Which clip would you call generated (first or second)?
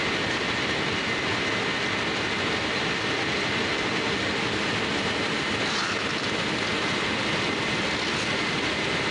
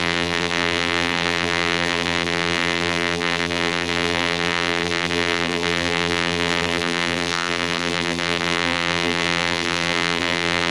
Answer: second